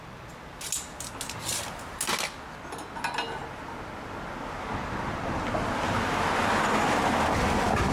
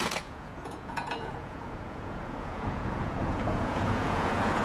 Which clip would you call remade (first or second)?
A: second